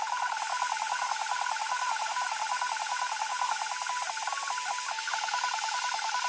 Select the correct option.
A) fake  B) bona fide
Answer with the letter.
B